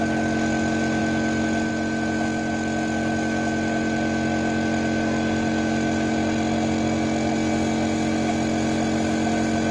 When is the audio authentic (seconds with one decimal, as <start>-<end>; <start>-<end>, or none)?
0.0-9.7